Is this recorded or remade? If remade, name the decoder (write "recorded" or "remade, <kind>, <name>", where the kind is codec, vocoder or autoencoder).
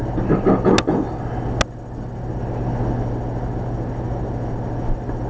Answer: recorded